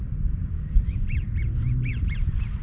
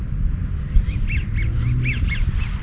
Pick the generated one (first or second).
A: first